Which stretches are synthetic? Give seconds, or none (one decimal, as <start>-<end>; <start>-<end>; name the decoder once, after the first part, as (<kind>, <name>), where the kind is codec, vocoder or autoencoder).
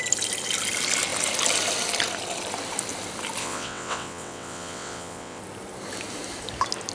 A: 3.4-5.4 (vocoder, WaveNeXt)